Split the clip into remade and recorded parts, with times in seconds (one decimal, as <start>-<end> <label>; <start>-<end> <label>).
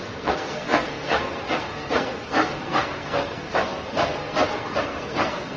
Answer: 0.0-5.6 remade